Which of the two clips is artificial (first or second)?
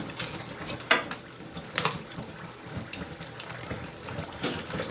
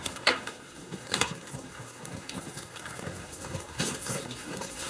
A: second